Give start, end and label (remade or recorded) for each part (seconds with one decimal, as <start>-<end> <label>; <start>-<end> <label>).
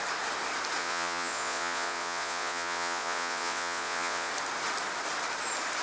0.0-0.8 recorded; 0.8-4.3 remade; 4.3-5.8 recorded